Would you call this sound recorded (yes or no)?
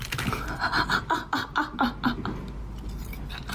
yes